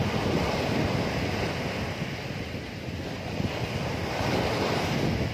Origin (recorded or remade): recorded